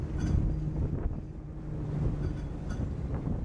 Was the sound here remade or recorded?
recorded